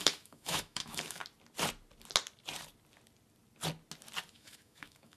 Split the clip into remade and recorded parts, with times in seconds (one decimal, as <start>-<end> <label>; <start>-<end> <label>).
0.0-1.2 remade; 1.2-4.3 recorded; 4.3-5.2 remade